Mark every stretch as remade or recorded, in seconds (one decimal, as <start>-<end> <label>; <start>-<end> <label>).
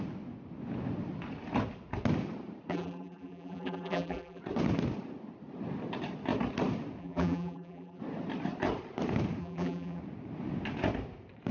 0.0-2.7 recorded; 2.7-4.4 remade; 4.4-7.0 recorded; 7.0-8.0 remade; 8.0-9.4 recorded; 9.4-10.0 remade; 10.0-11.5 recorded